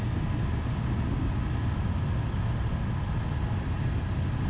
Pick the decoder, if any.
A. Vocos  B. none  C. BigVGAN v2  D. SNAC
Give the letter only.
B